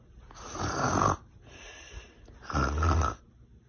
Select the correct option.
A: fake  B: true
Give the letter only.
B